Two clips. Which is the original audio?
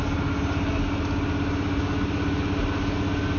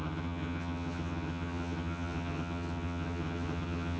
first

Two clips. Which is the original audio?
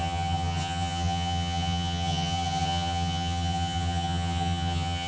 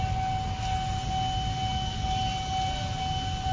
second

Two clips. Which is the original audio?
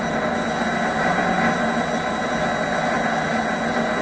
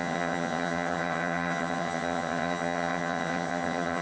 first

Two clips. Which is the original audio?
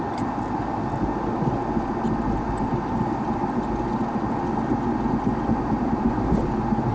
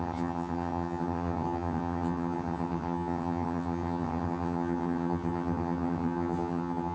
first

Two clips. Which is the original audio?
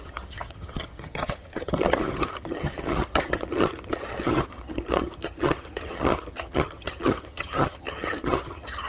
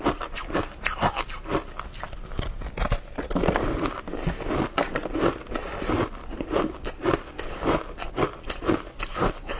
second